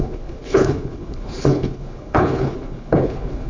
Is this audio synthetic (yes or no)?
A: yes